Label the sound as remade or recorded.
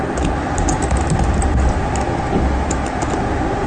recorded